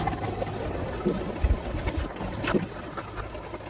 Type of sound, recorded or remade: recorded